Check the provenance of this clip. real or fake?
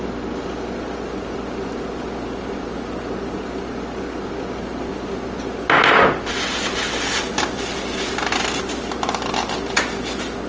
real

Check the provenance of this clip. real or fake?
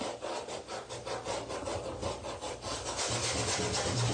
real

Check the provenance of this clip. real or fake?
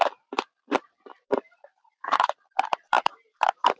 fake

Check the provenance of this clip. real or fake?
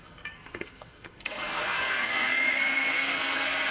fake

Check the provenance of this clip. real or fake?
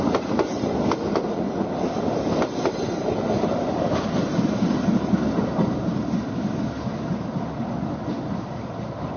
real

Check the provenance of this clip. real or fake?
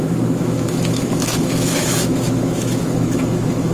fake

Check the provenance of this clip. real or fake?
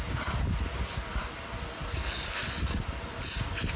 real